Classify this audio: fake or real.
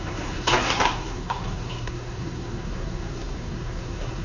fake